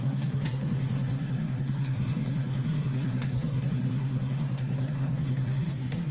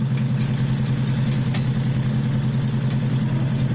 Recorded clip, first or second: second